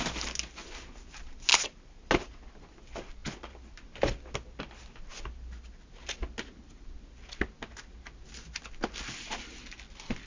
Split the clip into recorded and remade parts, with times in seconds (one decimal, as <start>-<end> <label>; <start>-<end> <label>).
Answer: 0.0-10.3 recorded